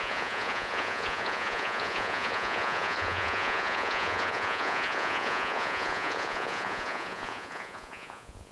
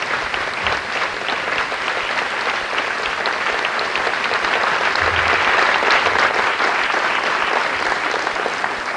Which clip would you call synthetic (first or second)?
first